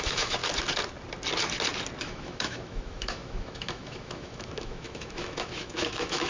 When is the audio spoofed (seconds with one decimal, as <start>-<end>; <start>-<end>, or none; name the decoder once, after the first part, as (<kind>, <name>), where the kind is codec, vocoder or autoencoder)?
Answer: 0.0-0.4 (autoencoder, DAC-VAE); 2.0-6.3